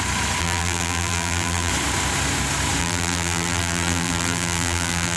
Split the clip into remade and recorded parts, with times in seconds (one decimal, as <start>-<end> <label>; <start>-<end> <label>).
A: 0.0-0.4 recorded; 0.4-1.7 remade; 1.7-2.8 recorded; 2.8-5.2 remade